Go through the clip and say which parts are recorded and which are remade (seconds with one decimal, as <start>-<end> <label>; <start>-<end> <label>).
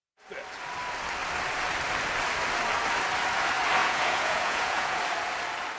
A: 0.0-3.8 recorded; 3.8-5.0 remade; 5.0-5.8 recorded